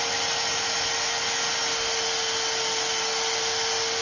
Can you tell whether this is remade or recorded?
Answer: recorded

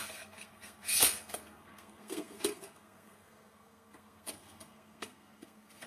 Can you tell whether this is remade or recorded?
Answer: remade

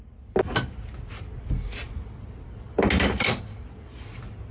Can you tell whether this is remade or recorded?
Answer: recorded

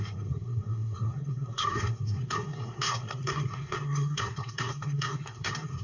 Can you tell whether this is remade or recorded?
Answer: remade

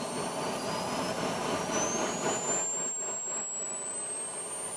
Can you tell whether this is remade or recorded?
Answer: recorded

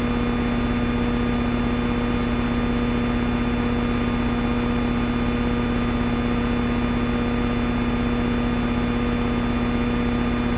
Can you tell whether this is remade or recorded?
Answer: recorded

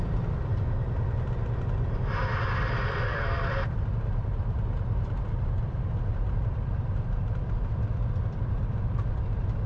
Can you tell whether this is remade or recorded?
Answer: remade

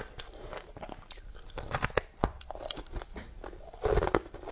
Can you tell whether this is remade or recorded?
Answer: recorded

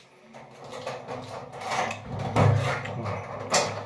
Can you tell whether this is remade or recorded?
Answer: recorded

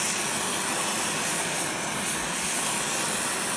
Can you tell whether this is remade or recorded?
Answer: recorded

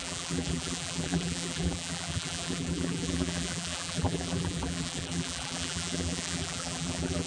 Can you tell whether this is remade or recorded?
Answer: remade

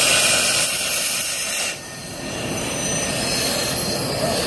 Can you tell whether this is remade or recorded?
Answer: recorded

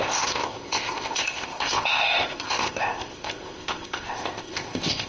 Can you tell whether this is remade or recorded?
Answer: remade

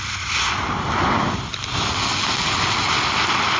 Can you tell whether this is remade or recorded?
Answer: recorded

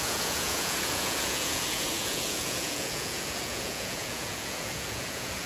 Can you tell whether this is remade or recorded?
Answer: remade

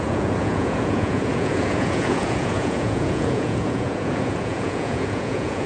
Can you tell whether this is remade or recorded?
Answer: remade